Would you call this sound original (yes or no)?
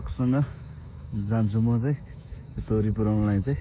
no